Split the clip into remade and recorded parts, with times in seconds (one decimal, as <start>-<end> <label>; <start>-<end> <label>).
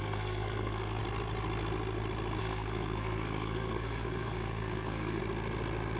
0.0-1.0 remade; 1.0-2.4 recorded; 2.4-5.2 remade; 5.2-6.0 recorded